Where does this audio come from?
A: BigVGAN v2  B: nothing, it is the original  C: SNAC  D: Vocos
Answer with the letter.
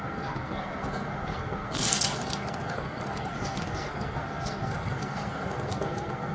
C